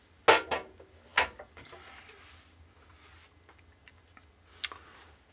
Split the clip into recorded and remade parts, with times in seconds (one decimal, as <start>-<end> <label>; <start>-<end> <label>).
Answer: 0.0-5.3 recorded